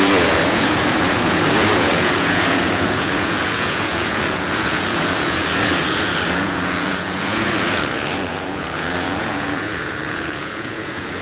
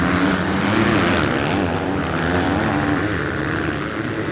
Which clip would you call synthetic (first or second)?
first